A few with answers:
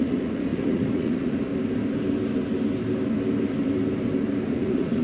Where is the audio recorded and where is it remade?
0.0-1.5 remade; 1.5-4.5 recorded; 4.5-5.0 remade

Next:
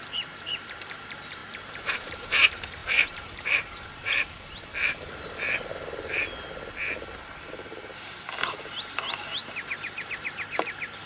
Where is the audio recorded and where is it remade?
0.0-4.7 remade; 4.7-7.5 recorded; 7.5-11.1 remade

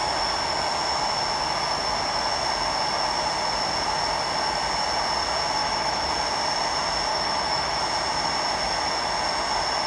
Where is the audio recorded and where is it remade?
0.0-5.6 recorded; 5.6-6.1 remade; 6.1-7.1 recorded; 7.1-7.8 remade; 7.8-9.9 recorded

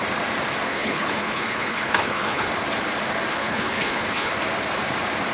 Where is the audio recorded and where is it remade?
0.0-0.7 recorded; 0.7-2.5 remade; 2.5-3.3 recorded; 3.3-4.3 remade; 4.3-5.3 recorded

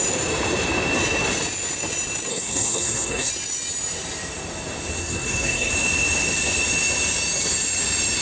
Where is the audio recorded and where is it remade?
0.0-2.3 recorded; 2.3-3.3 remade; 3.3-5.0 recorded; 5.0-5.7 remade; 5.7-8.2 recorded